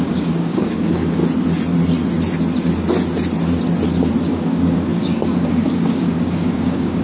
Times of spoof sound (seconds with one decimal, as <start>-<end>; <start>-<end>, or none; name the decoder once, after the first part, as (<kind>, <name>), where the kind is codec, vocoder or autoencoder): 0.0-1.2 (codec, DAC); 4.2-7.0